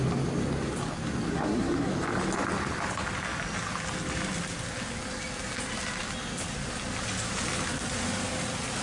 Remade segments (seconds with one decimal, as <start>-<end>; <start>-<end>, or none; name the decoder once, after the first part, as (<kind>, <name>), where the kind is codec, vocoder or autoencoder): 1.3-1.9 (codec, SNAC)

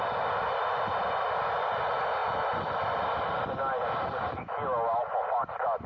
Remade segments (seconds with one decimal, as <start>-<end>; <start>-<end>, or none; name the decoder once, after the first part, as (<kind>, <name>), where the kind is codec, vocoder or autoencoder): none

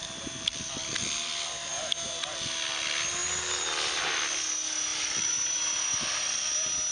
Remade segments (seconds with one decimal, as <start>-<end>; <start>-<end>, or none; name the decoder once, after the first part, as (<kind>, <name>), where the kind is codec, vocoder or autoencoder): 0.0-1.3 (vocoder, BigVGAN v2); 4.9-5.6

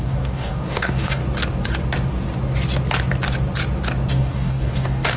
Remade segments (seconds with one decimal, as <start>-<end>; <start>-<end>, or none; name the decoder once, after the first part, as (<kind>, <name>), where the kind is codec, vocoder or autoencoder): 0.0-1.2 (codec, DAC); 4.1-5.2

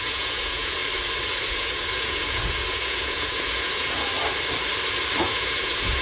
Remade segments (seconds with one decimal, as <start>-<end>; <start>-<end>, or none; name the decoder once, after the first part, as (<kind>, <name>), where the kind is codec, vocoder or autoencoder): 0.0-0.8 (vocoder, Vocos); 1.5-4.1; 5.2-6.0

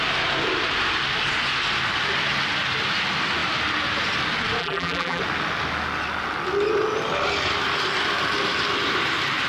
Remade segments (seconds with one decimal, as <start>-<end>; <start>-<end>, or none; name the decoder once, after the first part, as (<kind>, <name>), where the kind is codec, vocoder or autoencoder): 4.6-5.2 (vocoder, BigVGAN v2)

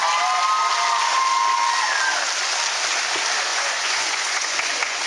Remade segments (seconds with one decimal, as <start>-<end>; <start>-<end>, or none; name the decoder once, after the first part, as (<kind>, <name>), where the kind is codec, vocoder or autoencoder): 3.5-5.1 (vocoder, Vocos)

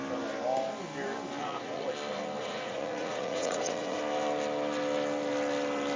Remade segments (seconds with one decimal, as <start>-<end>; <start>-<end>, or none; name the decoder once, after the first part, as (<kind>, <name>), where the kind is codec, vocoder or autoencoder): 1.4-1.9 (vocoder, Vocos); 2.4-4.0